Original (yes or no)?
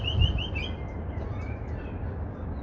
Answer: yes